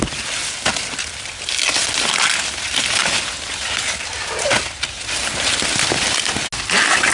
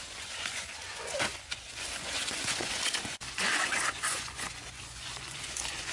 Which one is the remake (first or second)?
second